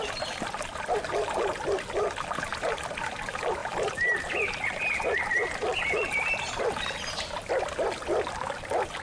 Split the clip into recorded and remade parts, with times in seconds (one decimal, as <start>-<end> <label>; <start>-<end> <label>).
0.0-9.0 recorded